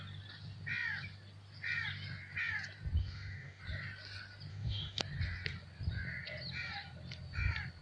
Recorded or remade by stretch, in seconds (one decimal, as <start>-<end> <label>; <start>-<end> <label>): 0.0-3.0 recorded; 3.0-3.6 remade; 3.6-4.5 recorded; 4.5-5.0 remade; 5.0-7.8 recorded